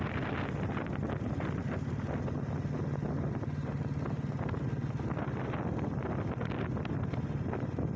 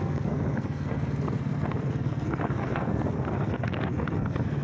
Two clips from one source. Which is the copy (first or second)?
second